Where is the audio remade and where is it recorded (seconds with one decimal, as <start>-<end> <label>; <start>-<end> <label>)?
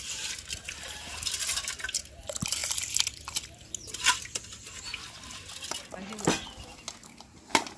0.0-2.6 remade; 2.6-7.1 recorded; 7.1-7.8 remade